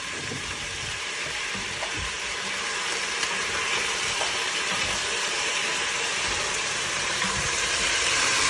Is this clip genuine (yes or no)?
no